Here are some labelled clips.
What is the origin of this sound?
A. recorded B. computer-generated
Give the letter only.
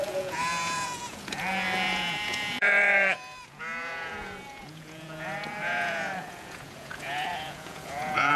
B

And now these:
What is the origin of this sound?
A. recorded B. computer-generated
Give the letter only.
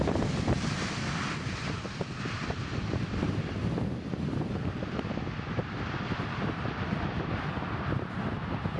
B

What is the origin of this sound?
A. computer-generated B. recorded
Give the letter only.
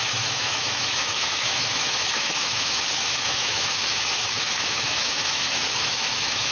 A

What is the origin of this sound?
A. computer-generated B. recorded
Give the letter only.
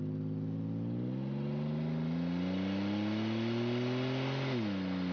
B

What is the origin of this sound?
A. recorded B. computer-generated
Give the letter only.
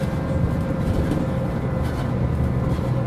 A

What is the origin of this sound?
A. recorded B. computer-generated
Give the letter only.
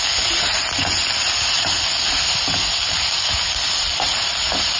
A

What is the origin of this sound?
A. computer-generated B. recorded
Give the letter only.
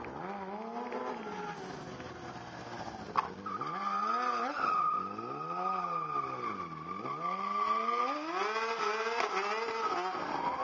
B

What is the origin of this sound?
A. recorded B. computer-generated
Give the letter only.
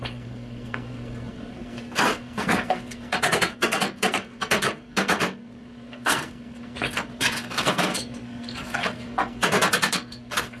B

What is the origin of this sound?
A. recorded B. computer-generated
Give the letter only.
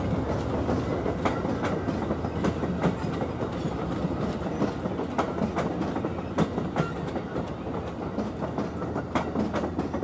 A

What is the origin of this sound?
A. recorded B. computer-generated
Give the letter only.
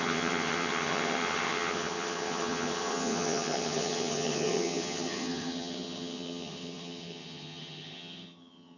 B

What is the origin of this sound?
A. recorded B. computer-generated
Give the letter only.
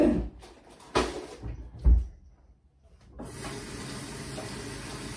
A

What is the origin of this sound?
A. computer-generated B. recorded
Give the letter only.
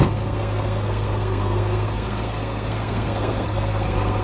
A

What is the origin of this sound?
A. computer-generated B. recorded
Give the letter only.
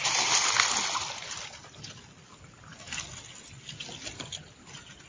B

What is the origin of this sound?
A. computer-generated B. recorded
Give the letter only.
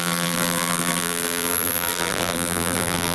A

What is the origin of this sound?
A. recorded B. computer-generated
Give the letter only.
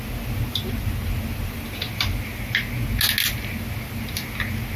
A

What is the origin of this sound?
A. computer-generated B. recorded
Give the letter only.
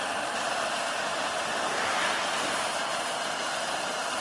A